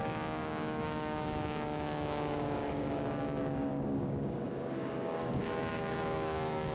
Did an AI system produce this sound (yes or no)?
yes